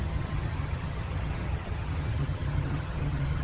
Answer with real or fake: fake